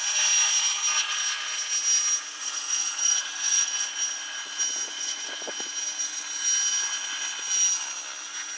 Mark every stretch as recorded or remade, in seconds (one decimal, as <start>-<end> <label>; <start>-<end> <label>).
0.0-2.4 recorded; 2.4-3.9 remade; 3.9-4.8 recorded; 4.8-5.3 remade; 5.3-8.6 recorded